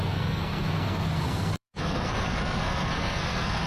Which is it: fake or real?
fake